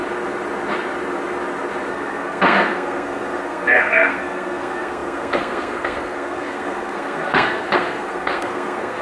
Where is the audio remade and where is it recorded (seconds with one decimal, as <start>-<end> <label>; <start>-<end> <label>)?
0.0-1.9 recorded; 1.9-9.0 remade